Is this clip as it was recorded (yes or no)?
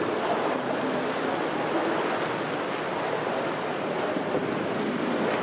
yes